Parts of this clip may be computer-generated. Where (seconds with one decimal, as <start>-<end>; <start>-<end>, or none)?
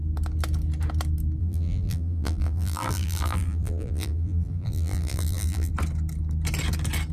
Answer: 1.4-5.7